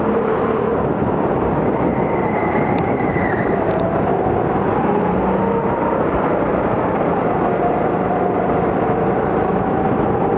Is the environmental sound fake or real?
real